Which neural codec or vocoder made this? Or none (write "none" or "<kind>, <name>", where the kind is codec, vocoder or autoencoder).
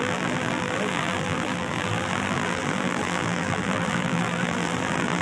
vocoder, BigVGAN v2